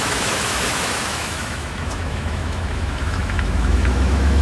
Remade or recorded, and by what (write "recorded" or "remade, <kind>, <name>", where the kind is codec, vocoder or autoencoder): remade, autoencoder, DAC-VAE